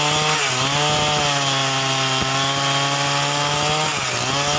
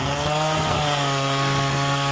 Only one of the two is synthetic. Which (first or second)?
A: second